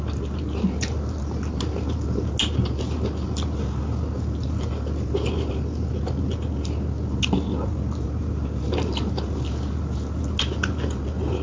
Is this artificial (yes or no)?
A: no